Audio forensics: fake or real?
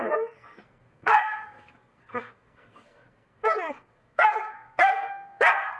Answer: fake